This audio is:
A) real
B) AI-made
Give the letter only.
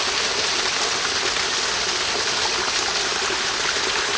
A